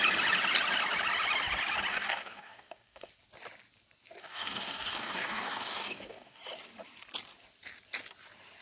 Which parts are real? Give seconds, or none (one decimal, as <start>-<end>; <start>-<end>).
0.0-1.9; 3.1-4.2; 6.4-8.6